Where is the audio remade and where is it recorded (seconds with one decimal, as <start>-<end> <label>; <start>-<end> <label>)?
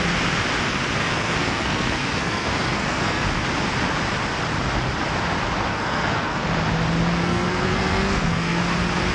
0.0-1.0 recorded; 1.0-3.2 remade; 3.2-5.7 recorded; 5.7-6.5 remade; 6.5-7.2 recorded; 7.2-8.6 remade; 8.6-9.1 recorded